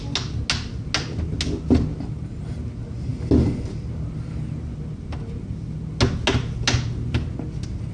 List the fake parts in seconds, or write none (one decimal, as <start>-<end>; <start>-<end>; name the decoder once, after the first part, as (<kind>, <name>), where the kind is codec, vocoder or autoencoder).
none